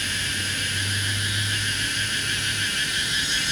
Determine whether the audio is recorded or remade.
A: recorded